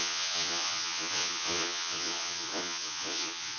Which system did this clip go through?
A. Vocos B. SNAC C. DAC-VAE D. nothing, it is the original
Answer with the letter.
A